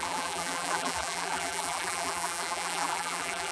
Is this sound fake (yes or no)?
yes